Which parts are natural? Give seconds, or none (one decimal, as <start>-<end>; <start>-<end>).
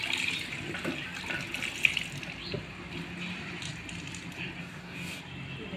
0.0-4.6; 5.2-5.8